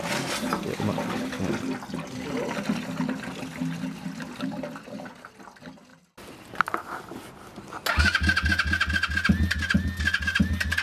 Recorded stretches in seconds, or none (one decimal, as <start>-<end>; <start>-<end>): 0.0-10.8